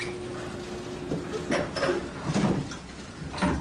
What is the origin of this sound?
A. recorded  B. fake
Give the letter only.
A